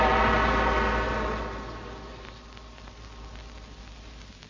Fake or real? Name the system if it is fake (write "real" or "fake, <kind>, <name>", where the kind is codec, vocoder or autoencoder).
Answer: real